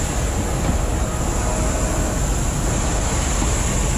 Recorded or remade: recorded